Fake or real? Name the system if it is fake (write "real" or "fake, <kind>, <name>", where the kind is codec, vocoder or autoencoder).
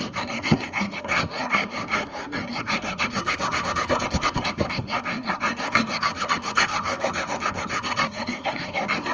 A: fake, codec, SNAC